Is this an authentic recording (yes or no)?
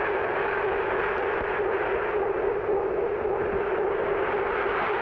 yes